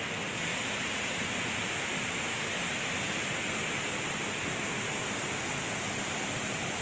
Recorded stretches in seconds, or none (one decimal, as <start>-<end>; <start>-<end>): 0.0-0.5; 1.2-6.8